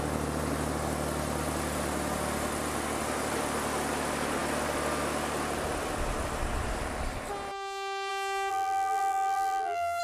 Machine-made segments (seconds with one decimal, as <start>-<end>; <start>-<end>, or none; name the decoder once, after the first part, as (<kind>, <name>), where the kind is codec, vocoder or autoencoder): 8.5-10.0 (vocoder, BigVGAN v2)